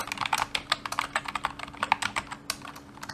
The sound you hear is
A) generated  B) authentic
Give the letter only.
B